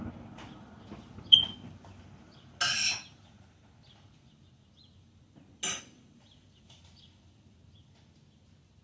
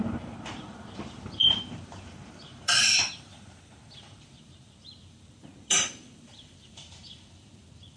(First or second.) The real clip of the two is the first